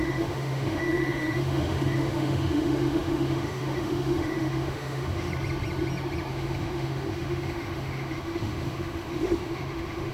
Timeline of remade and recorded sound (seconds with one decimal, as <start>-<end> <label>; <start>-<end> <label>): 0.0-5.3 remade; 5.3-6.3 recorded; 6.3-10.1 remade